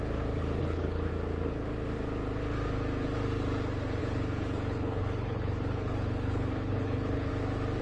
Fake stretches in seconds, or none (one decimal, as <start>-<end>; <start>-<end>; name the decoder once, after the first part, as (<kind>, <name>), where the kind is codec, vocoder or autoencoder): 0.6-1.1 (codec, HILCodec); 4.0-7.3